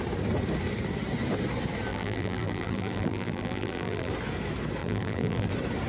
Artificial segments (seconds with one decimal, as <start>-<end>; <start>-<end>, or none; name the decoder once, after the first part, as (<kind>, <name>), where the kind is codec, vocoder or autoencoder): 1.9-4.1 (vocoder, BigVGAN v2); 4.8-5.5